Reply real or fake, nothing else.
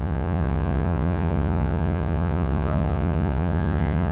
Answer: fake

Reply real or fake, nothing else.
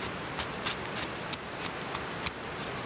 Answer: real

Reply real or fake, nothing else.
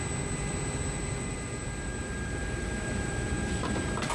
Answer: fake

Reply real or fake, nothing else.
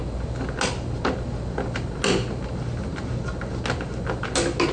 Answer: real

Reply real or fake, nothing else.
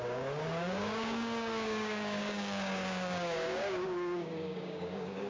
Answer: fake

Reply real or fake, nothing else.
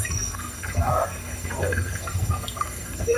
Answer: fake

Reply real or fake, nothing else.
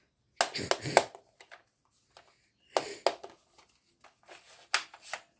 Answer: real